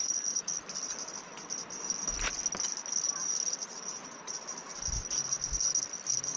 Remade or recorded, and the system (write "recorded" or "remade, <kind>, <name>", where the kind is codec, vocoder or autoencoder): recorded